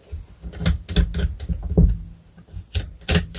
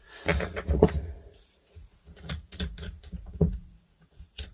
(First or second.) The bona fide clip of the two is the first